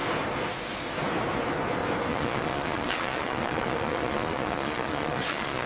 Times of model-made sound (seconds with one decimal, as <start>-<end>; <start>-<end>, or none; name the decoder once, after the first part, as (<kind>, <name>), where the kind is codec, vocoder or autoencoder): 2.1-5.7 (vocoder, Vocos)